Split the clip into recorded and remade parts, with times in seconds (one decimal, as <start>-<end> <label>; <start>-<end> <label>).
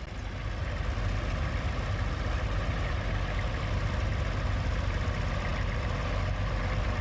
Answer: 0.0-7.0 recorded